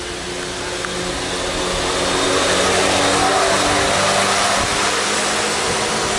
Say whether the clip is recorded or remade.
recorded